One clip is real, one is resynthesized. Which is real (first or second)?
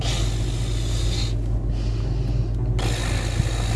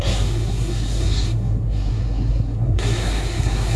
first